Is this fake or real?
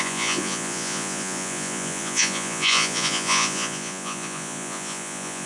fake